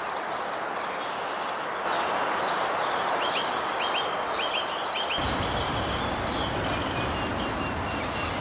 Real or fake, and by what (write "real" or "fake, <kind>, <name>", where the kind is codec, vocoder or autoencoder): real